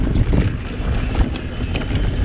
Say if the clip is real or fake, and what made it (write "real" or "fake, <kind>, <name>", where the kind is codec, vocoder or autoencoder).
real